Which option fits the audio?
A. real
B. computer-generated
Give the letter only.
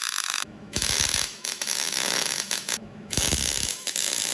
B